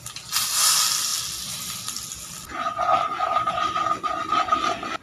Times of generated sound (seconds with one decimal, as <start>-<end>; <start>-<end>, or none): 0.0-1.1; 3.5-5.0